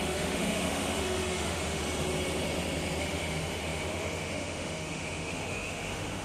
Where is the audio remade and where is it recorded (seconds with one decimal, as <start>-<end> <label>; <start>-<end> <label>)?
0.0-1.8 remade; 1.8-3.0 recorded; 3.0-6.2 remade